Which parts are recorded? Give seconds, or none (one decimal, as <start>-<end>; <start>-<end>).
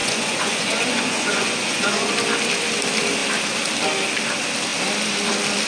2.1-5.7